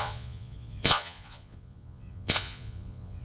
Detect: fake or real fake